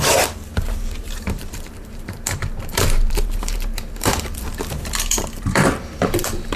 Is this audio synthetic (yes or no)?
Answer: yes